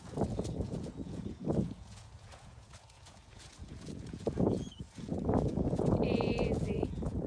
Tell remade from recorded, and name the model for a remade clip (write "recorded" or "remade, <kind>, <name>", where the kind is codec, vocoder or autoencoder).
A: remade, vocoder, Vocos